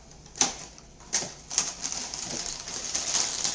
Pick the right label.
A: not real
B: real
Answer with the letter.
B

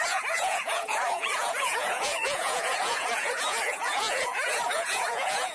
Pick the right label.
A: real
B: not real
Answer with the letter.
B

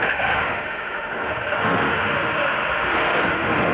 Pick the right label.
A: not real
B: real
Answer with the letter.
A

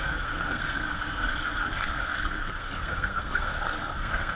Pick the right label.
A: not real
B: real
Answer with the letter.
A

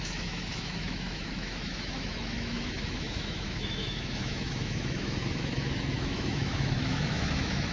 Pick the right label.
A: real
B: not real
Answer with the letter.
B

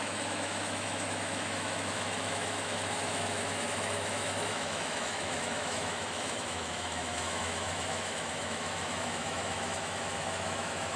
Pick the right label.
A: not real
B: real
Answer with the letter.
A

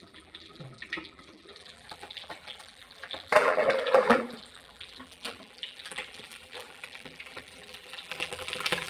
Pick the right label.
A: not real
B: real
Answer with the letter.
A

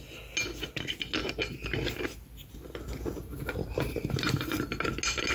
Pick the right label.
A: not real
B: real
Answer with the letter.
B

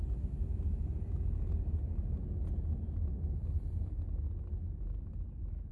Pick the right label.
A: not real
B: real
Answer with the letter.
B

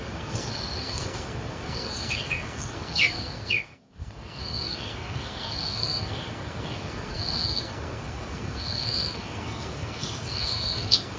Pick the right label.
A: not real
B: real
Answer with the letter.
A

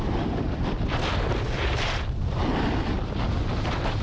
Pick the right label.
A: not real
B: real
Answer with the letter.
A